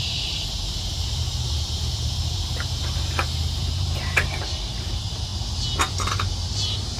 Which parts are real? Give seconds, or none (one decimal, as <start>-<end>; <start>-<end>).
5.3-5.9